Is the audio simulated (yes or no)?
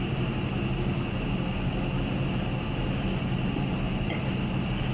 no